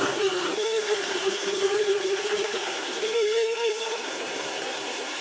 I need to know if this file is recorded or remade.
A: remade